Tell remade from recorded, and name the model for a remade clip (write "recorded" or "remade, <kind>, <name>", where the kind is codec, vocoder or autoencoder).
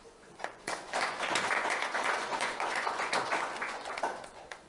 remade, vocoder, Vocos